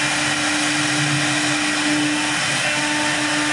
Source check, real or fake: real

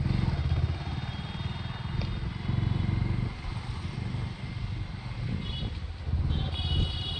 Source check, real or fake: real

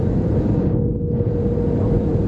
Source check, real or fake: real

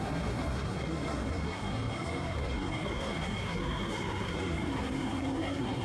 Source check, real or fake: fake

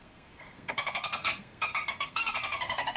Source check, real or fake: fake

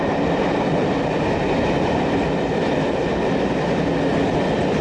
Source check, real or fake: real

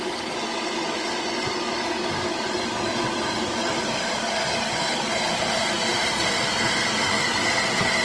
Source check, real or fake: real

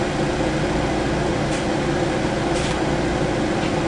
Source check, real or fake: real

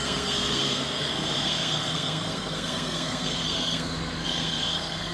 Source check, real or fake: fake